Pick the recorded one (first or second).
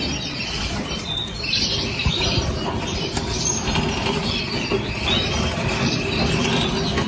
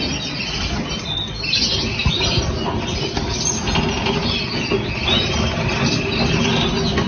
second